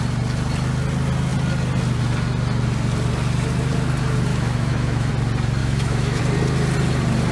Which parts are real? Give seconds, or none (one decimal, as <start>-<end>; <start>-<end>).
0.0-4.3; 5.1-5.6; 6.2-7.3